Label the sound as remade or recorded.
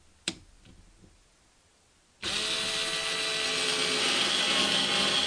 recorded